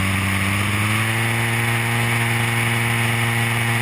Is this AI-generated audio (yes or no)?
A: no